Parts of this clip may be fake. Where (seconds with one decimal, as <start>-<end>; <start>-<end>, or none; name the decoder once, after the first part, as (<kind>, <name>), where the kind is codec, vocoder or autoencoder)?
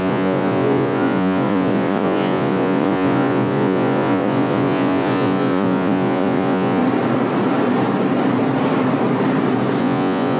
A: 0.0-6.8 (vocoder, Vocos); 9.8-10.4